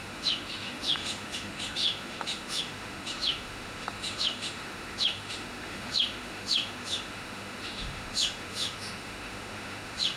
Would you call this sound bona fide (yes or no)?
no